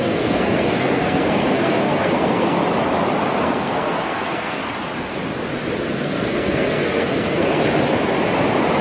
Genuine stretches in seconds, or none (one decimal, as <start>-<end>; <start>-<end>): 2.6-3.4; 4.6-5.9; 7.6-8.8